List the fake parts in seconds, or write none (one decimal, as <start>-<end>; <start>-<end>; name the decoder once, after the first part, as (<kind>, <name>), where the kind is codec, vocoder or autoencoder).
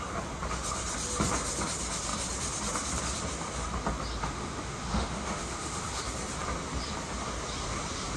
4.2-6.0 (autoencoder, DAC-VAE)